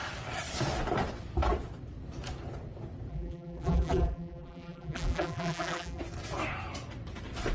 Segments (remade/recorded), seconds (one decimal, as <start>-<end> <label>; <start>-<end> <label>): 0.0-3.1 recorded; 3.1-6.0 remade; 6.0-7.5 recorded